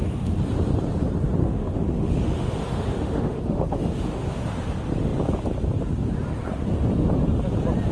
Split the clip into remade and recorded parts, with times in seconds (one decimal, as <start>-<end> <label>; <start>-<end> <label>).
0.0-1.4 recorded; 1.4-4.4 remade; 4.4-7.9 recorded